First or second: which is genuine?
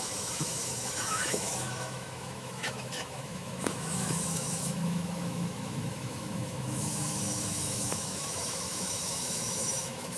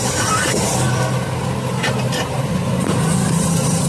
second